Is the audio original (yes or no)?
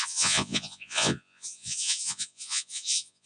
no